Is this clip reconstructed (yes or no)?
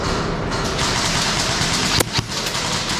no